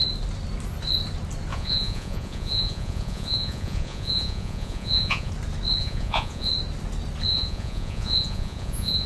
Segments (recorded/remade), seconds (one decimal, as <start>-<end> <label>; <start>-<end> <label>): 0.0-1.5 recorded; 1.5-5.3 remade; 5.3-5.8 recorded; 5.8-6.5 remade; 6.5-7.3 recorded; 7.3-9.1 remade